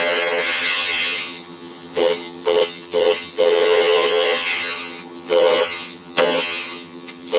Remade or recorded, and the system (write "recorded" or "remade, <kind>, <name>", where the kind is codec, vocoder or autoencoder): remade, vocoder, HiFi-GAN